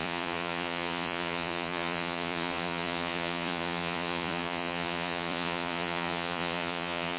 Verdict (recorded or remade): remade